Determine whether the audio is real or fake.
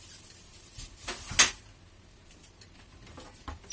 real